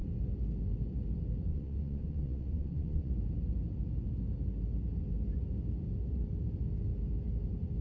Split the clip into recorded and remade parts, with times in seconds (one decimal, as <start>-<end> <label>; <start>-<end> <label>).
0.0-1.5 recorded; 1.5-3.1 remade; 3.1-7.8 recorded